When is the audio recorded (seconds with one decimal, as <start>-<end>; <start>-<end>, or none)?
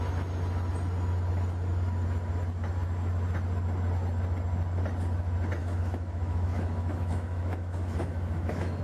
0.0-5.6